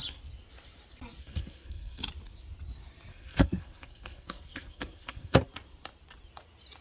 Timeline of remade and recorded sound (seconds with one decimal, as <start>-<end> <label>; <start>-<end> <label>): 0.0-1.2 recorded; 1.2-2.0 remade; 2.0-3.1 recorded; 3.1-5.4 remade; 5.4-6.8 recorded